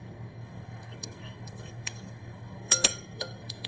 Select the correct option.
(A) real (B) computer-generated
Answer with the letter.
B